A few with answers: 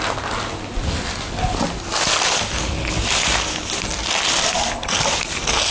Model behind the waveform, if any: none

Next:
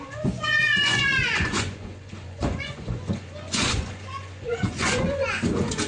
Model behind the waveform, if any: vocoder, Vocos